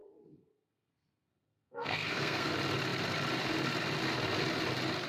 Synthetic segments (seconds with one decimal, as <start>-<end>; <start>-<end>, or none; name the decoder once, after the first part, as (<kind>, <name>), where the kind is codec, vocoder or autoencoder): 0.0-2.5 (codec, SNAC)